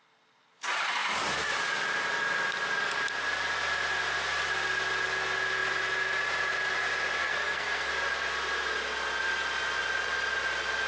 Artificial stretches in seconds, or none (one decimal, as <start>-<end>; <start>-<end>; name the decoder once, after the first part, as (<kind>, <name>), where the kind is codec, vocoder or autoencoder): 7.2-7.9 (codec, SNAC)

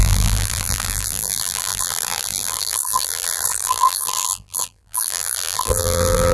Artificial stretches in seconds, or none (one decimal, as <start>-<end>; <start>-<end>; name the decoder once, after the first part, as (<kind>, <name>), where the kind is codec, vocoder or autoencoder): 0.0-6.3 (vocoder, BigVGAN v2)

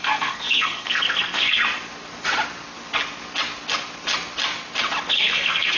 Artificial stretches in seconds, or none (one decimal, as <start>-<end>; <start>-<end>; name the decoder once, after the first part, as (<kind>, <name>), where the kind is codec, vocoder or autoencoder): 0.0-1.6 (codec, SNAC); 5.1-5.8

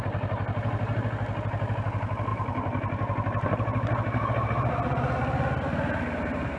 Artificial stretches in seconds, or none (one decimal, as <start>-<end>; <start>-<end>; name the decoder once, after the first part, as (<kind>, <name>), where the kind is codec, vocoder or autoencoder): none

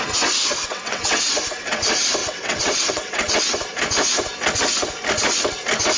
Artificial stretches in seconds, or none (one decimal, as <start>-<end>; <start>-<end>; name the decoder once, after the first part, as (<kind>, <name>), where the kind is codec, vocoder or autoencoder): 0.6-1.2 (vocoder, WaveNeXt); 2.2-3.4

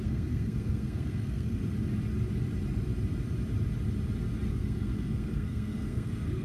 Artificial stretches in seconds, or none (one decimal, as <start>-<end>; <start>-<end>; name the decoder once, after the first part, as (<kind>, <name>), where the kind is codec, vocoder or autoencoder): 0.0-1.6 (codec, SNAC); 4.5-6.4

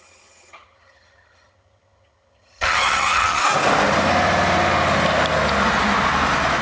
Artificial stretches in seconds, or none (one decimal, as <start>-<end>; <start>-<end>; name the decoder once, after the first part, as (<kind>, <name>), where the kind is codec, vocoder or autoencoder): 0.0-3.4 (vocoder, HiFi-GAN)